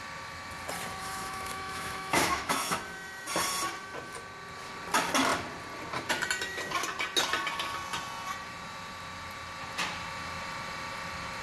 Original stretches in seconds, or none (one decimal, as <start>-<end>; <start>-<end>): 0.0-1.0; 2.8-11.4